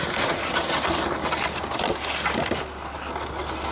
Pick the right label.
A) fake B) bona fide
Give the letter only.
B